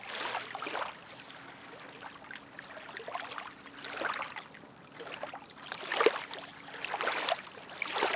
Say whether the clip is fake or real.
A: real